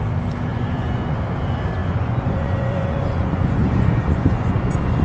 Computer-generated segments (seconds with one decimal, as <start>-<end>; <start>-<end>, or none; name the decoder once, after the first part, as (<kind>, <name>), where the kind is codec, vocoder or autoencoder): 0.5-1.2 (vocoder, Vocos); 1.8-5.0